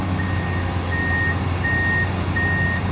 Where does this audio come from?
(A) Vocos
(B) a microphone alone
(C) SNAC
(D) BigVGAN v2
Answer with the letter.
B